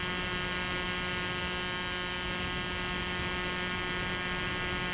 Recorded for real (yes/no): yes